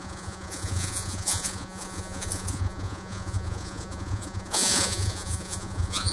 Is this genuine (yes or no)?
no